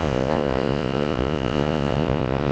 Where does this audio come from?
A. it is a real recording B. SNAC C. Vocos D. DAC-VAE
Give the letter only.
C